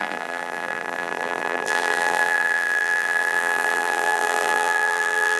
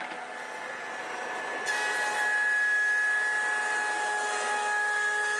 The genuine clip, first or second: second